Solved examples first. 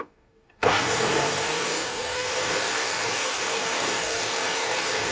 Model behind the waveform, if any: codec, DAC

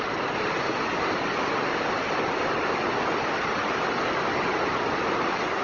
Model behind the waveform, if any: none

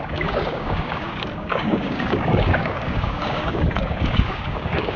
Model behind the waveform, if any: codec, DAC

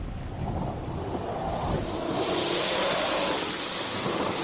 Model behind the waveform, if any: none